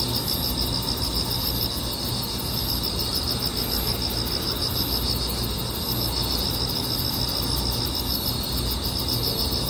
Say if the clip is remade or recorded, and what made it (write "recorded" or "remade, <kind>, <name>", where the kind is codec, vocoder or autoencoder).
recorded